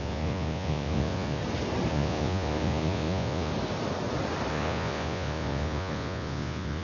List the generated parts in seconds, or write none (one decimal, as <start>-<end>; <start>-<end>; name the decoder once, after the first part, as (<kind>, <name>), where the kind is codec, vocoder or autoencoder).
0.0-1.4 (vocoder, Vocos); 1.9-3.5; 4.5-6.8